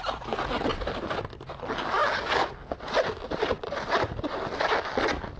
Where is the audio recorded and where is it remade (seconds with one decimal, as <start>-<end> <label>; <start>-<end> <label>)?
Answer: 0.0-0.7 recorded; 0.7-1.2 remade; 1.2-5.4 recorded